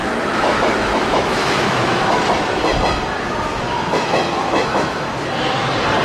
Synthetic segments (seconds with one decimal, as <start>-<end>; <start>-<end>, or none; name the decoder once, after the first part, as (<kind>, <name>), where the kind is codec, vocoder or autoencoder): 0.0-2.2 (autoencoder, DAC-VAE); 3.5-5.1